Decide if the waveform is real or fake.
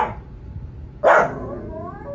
real